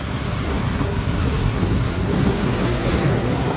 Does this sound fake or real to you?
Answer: fake